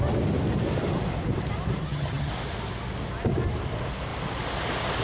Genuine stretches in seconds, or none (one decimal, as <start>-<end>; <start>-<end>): 0.0-1.8; 2.3-5.0